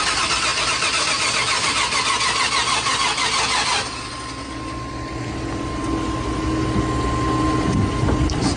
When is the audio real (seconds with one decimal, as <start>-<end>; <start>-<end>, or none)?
0.0-8.6